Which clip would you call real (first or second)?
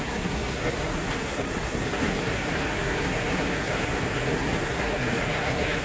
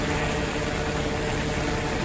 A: second